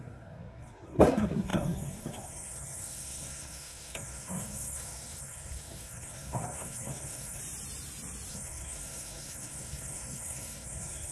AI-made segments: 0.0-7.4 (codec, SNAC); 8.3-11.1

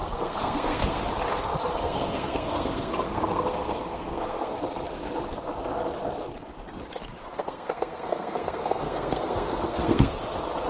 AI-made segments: 0.0-1.0 (codec, SNAC); 1.7-4.5; 7.2-10.2

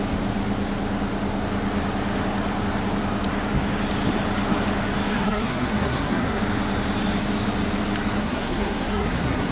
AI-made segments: 5.1-6.4 (codec, SNAC); 8.2-9.5

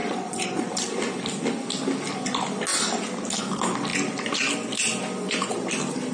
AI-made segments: 0.0-0.7 (vocoder, Vocos)

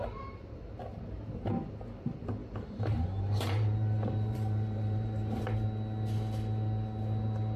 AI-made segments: 2.4-5.4 (vocoder, BigVGAN v2)

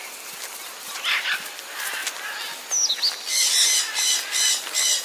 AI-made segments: none

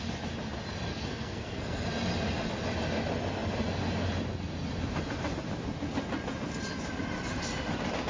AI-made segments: 0.9-1.9 (codec, SNAC)

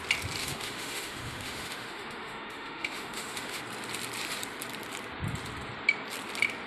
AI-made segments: 0.4-3.6 (autoencoder, DAC-VAE)